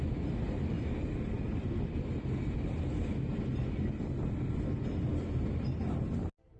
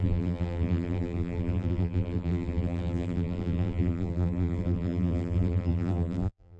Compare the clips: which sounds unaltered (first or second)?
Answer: first